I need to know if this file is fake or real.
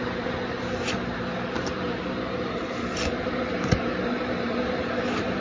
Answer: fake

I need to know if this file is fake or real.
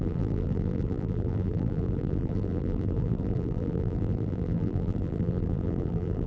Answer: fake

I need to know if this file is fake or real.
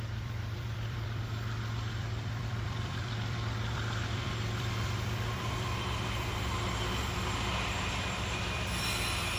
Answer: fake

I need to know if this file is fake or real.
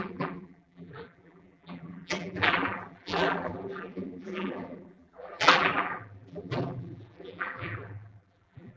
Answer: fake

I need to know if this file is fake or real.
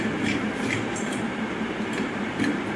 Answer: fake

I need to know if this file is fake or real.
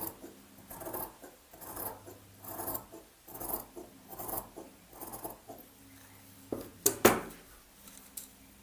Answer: real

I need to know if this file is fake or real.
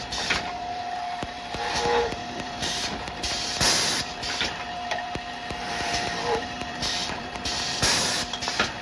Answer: fake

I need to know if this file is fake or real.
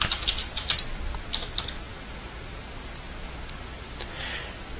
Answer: real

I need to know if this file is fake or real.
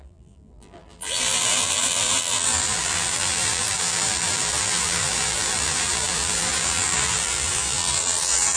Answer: fake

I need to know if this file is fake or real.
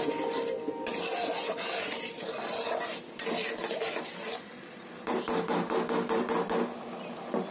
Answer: real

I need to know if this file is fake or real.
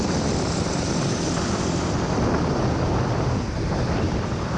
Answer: fake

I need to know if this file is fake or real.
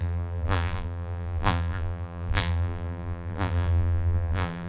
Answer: fake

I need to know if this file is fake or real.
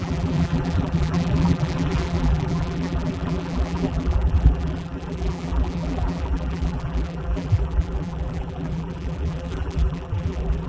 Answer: fake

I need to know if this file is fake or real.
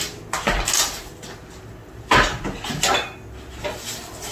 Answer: real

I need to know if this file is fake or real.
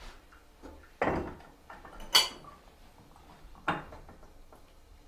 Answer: real